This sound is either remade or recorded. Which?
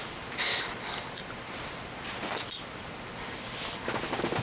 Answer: recorded